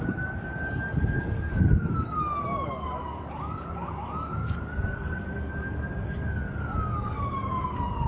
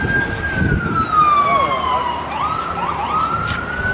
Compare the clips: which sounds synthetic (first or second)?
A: first